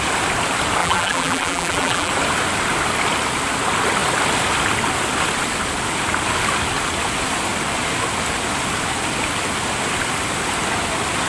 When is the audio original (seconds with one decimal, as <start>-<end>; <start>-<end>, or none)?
0.0-0.8; 2.1-11.3